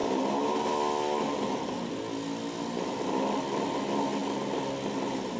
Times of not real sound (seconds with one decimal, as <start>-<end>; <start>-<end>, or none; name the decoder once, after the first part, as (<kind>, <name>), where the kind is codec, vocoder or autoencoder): none